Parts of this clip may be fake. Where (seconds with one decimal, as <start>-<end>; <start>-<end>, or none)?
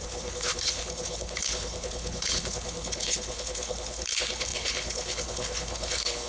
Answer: 0.0-6.3